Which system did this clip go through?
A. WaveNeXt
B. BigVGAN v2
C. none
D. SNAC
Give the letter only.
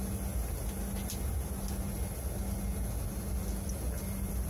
C